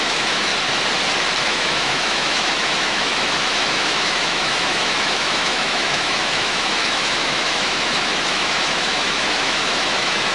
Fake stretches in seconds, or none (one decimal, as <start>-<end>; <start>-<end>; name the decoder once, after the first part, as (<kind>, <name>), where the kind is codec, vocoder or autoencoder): 0.0-0.5 (autoencoder, DAC-VAE); 1.4-10.3